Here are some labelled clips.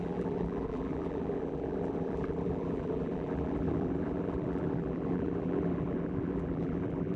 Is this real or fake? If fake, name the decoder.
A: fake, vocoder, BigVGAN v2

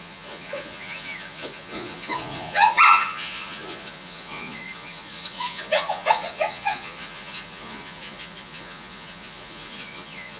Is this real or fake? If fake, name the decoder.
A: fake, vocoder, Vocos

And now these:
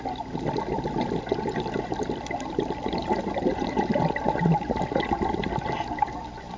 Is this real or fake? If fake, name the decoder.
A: real